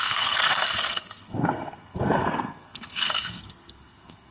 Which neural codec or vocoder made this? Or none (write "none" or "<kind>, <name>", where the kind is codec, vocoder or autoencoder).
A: codec, SNAC